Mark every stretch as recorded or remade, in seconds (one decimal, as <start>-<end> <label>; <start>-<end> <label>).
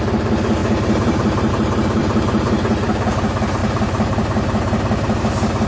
0.0-0.6 recorded; 0.6-1.5 remade; 1.5-2.0 recorded; 2.0-3.1 remade; 3.1-3.6 recorded; 3.6-5.2 remade; 5.2-5.7 recorded